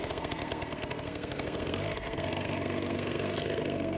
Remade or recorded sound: remade